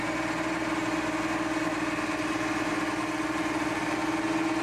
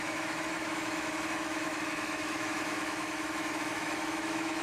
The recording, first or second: first